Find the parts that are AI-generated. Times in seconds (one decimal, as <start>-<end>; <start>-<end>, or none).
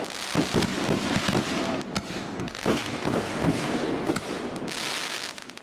2.1-4.1